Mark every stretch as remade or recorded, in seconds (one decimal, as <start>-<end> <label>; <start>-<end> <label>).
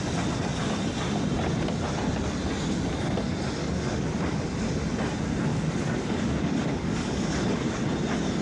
0.0-3.6 recorded; 3.6-4.4 remade; 4.4-5.5 recorded; 5.5-7.8 remade; 7.8-8.4 recorded